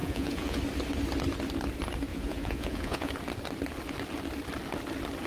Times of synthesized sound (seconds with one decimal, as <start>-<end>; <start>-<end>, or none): 0.0-0.6; 2.1-3.1